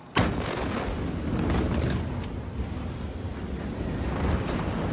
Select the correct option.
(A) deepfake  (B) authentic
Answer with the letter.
B